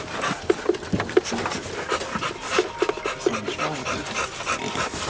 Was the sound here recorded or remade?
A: recorded